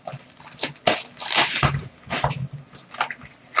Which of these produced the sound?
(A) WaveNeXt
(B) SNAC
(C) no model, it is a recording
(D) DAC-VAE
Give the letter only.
C